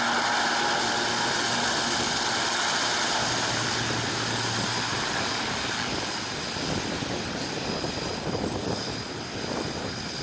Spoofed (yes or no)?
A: no